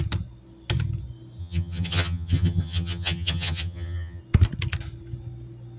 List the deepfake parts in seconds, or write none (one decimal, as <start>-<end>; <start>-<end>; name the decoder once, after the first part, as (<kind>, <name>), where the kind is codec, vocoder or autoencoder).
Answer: 1.4-4.2 (vocoder, HiFi-GAN)